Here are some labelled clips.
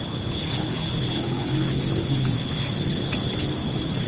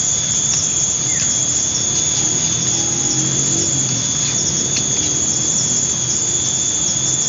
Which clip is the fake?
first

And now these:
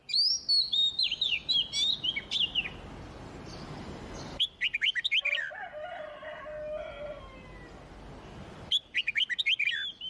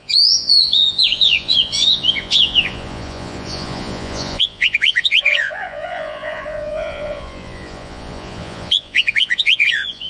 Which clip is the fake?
second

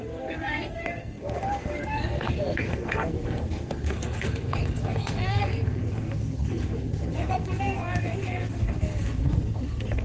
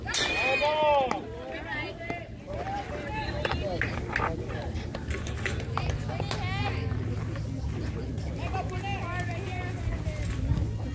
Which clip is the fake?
first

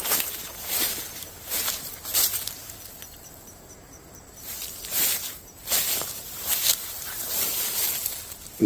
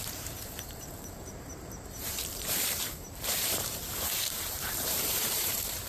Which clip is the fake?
second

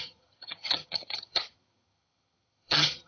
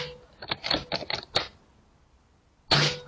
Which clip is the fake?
first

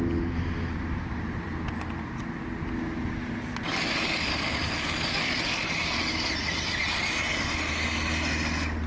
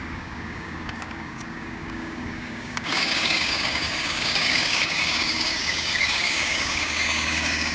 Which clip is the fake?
second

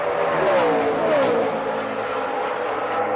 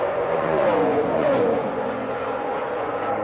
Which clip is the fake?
second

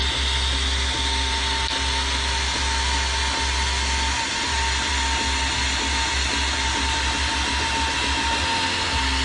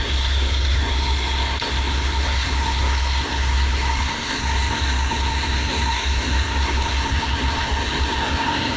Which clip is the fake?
second